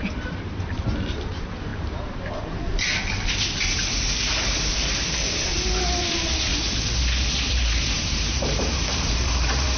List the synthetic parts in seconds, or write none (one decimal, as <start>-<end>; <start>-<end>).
0.0-2.7; 6.0-6.5; 7.5-9.8